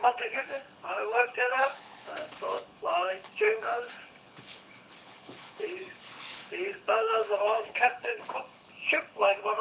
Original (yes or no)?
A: no